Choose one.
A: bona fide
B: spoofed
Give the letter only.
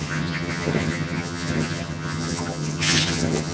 B